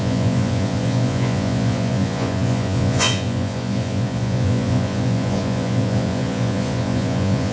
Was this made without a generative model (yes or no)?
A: no